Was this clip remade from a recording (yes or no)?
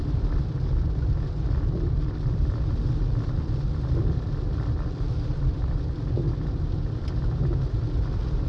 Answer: yes